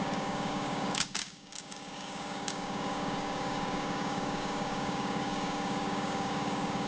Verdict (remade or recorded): remade